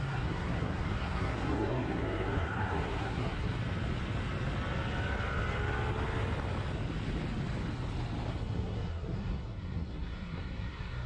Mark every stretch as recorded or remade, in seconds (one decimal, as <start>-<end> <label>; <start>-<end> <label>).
0.0-3.6 remade; 3.6-8.3 recorded; 8.3-11.1 remade